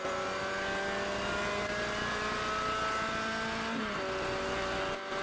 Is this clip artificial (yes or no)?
no